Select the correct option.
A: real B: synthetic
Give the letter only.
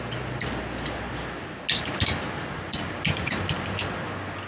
A